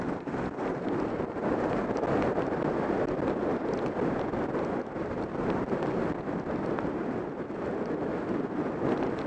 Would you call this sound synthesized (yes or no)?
no